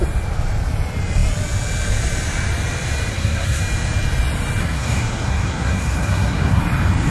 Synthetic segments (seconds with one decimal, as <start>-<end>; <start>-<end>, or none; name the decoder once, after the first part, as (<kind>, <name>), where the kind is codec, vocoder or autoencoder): 3.1-3.6 (codec, SNAC); 4.6-6.6